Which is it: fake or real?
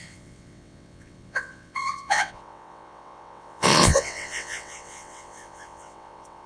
fake